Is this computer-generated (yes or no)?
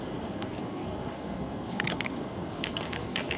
yes